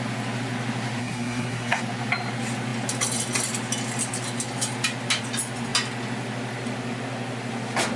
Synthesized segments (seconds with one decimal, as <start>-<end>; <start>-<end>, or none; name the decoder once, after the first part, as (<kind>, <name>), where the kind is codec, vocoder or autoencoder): 1.0-1.8 (codec, SNAC)